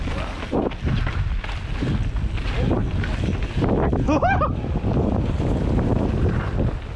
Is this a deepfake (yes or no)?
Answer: no